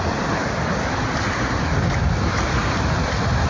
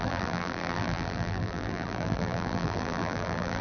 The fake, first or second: second